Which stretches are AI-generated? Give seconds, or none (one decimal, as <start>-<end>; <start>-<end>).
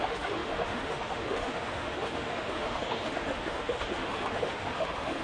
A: 0.0-5.2